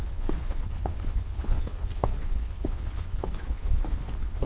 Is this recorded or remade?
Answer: remade